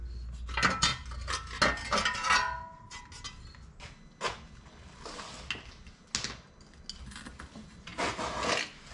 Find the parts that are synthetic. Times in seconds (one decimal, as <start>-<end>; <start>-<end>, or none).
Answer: none